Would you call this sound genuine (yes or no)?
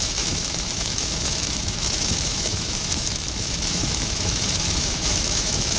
no